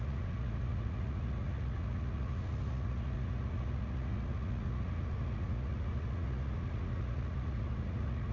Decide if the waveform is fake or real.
fake